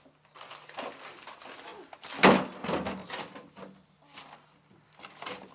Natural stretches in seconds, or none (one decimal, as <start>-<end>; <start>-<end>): 0.0-5.5